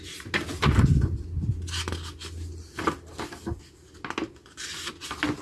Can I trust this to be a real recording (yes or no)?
yes